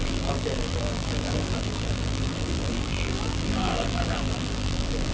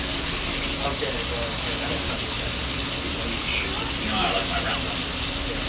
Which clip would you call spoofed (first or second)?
first